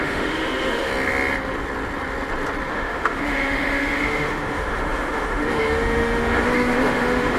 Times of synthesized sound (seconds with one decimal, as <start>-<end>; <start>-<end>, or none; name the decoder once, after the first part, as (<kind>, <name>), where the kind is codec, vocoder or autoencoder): 0.0-0.9 (autoencoder, DAC-VAE); 2.7-7.4